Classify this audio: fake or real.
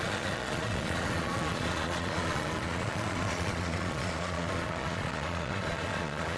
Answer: fake